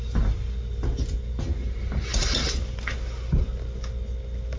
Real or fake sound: real